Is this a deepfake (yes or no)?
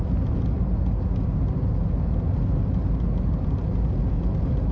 no